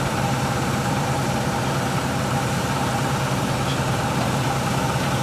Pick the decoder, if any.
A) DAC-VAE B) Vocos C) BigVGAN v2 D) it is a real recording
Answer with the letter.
C